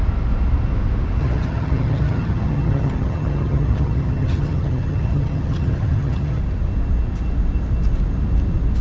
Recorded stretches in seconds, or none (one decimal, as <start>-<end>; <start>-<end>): 0.0-1.2; 6.4-8.8